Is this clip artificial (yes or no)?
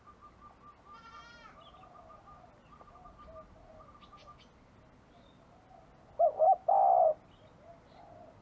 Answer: no